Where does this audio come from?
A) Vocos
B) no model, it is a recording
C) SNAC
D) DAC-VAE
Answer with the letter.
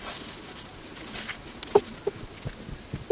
B